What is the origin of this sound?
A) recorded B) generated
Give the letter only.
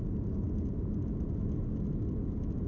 A